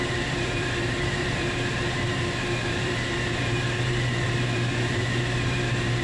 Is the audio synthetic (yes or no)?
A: yes